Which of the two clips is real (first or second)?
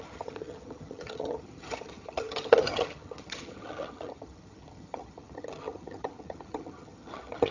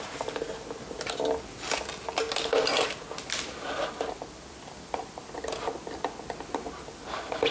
second